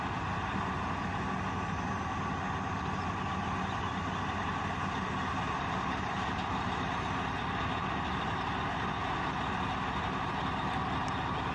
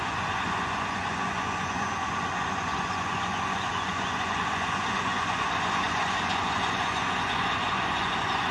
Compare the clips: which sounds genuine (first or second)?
first